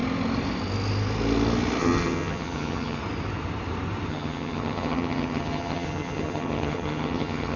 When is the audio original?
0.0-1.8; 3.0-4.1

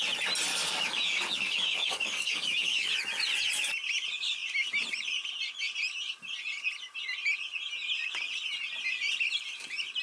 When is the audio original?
0.0-0.5; 2.9-10.0